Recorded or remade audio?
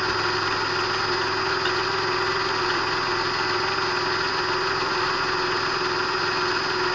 recorded